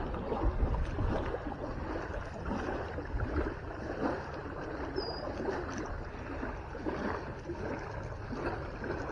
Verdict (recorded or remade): recorded